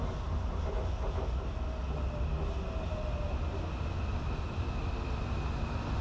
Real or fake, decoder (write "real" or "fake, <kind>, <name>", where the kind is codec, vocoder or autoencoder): real